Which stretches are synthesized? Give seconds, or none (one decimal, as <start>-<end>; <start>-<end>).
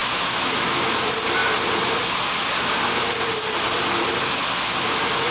0.0-0.9